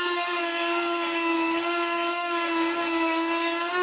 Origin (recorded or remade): remade